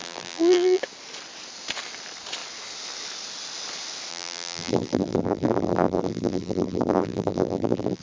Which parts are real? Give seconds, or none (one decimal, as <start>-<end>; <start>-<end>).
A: 0.8-4.1